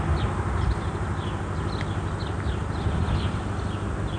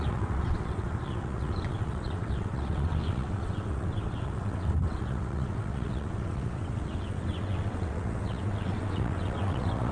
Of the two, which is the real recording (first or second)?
first